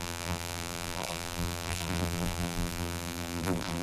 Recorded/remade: remade